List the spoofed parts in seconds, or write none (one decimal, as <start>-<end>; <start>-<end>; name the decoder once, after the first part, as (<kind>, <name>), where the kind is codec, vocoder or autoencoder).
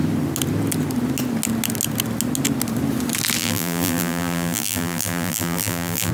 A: 3.4-6.1 (vocoder, BigVGAN v2)